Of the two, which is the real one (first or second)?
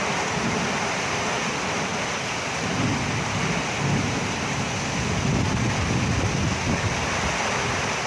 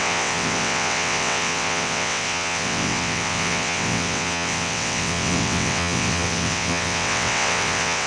first